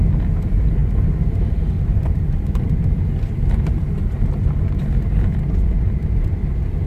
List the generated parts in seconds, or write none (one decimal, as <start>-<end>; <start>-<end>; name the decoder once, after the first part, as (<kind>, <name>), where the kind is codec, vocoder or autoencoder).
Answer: 0.8-4.9 (vocoder, BigVGAN v2)